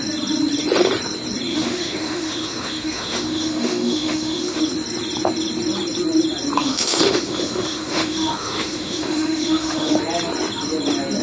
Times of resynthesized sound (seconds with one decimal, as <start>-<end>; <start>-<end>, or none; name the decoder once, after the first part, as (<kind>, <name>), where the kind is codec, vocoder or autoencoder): 1.5-4.6 (autoencoder, DAC-VAE); 6.6-10.0